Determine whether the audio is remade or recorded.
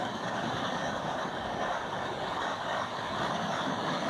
remade